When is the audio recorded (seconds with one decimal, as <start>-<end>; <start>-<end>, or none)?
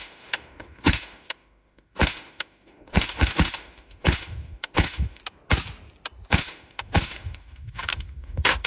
5.2-6.3